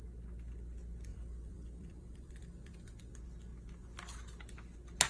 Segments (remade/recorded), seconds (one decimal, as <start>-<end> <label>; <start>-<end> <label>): 0.0-1.1 recorded; 1.1-3.1 remade; 3.1-5.1 recorded